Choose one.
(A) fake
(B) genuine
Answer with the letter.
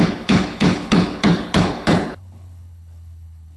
A